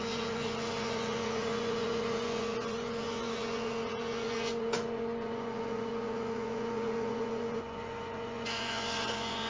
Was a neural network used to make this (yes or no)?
yes